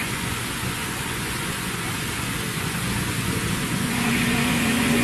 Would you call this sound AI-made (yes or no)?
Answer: yes